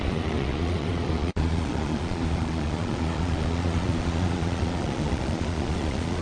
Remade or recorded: remade